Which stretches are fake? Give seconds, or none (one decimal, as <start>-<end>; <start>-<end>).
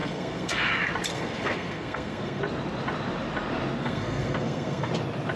0.0-0.7; 1.1-2.4; 3.8-4.9